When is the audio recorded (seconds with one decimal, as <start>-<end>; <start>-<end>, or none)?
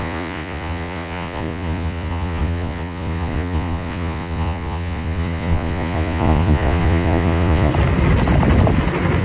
7.7-9.2